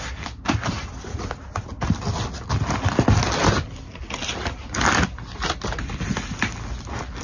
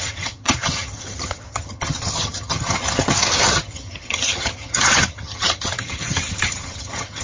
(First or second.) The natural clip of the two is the first